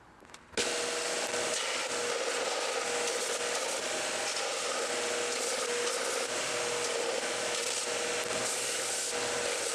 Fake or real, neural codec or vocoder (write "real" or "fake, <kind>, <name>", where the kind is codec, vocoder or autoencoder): real